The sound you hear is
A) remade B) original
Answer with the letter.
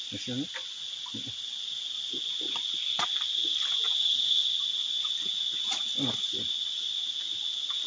B